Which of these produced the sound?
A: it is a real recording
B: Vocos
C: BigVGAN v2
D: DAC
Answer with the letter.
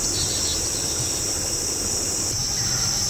A